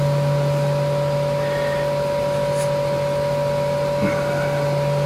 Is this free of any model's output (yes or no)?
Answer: yes